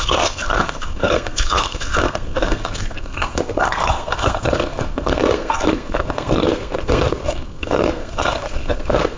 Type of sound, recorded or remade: remade